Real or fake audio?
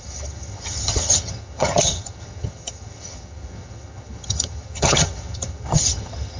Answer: fake